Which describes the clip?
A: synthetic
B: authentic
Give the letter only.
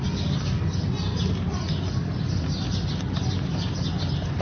B